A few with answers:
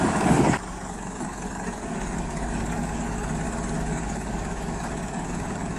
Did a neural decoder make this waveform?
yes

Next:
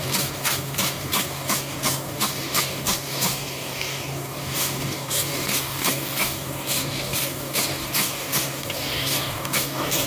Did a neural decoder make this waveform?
yes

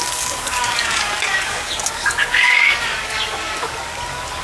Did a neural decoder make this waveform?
yes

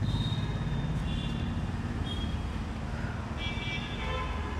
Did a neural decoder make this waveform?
no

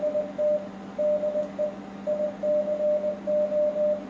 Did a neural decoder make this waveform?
no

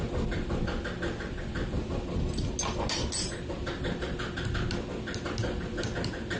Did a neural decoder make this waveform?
no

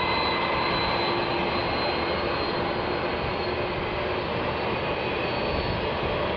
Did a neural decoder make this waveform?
no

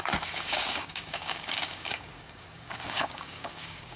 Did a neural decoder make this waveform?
yes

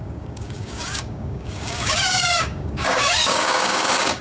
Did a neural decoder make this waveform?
yes